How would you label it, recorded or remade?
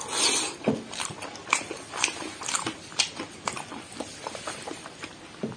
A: recorded